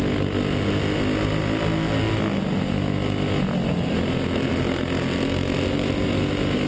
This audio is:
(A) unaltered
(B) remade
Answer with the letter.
A